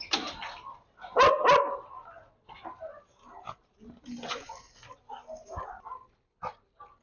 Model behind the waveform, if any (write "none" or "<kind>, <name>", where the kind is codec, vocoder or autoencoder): none